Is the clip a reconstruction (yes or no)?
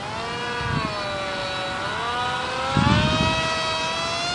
no